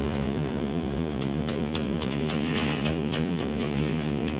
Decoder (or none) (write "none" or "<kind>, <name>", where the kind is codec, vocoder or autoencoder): vocoder, Vocos